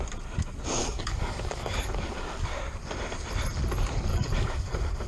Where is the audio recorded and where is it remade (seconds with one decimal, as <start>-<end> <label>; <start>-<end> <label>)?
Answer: 0.0-0.8 recorded; 0.8-2.6 remade; 2.6-4.1 recorded; 4.1-5.1 remade